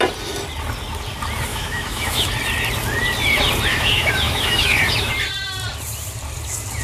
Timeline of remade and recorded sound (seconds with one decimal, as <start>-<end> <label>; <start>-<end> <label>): 0.0-1.5 recorded; 1.5-2.3 remade; 2.3-3.7 recorded; 3.7-5.1 remade; 5.1-6.8 recorded